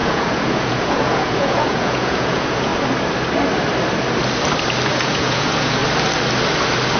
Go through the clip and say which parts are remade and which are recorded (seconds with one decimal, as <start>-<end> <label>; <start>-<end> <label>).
0.0-2.7 remade; 2.7-4.9 recorded; 4.9-5.8 remade; 5.8-7.0 recorded